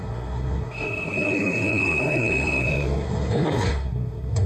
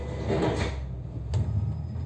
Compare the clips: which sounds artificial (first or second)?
first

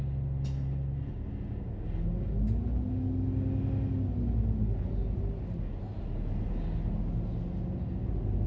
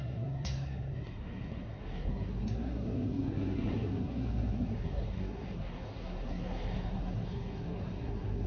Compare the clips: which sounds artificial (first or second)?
second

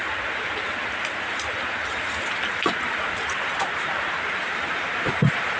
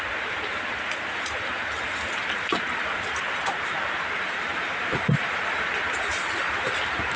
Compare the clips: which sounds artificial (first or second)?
first